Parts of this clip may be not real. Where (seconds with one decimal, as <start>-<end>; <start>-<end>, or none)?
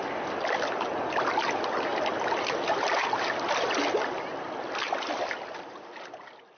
none